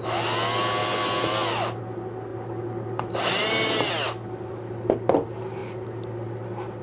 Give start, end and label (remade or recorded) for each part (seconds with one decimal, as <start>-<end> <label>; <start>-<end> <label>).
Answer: 0.0-6.8 recorded